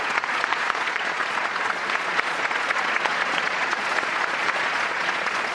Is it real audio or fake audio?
fake